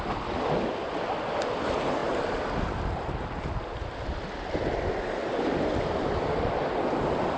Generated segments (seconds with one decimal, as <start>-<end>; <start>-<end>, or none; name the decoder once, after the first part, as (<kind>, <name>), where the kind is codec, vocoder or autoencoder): none